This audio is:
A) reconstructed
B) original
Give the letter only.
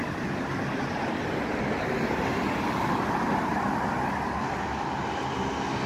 B